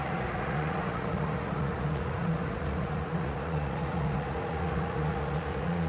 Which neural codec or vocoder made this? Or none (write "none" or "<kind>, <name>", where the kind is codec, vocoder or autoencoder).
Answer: vocoder, Vocos